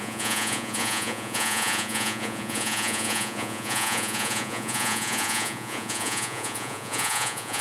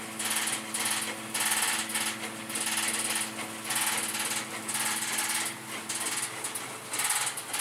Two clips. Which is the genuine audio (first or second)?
second